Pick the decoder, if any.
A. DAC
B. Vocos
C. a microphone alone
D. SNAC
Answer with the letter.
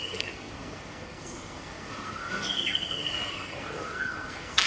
D